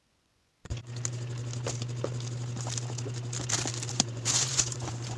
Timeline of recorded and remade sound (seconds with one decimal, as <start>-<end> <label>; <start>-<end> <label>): 0.0-0.8 remade; 0.8-3.9 recorded; 3.9-5.2 remade